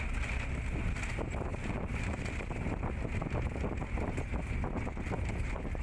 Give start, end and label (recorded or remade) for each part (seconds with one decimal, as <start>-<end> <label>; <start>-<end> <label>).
0.0-1.5 recorded; 1.5-2.9 remade; 2.9-5.8 recorded